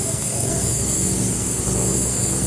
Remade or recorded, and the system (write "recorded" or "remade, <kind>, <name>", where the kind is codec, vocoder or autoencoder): remade, codec, SNAC